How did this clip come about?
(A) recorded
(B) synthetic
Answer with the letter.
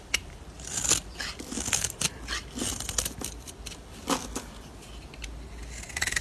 A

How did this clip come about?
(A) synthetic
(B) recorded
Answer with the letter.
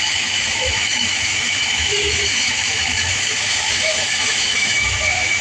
A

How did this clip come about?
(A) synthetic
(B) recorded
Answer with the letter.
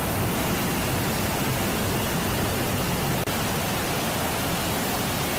B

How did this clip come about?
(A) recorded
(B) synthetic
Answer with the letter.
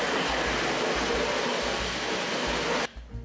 A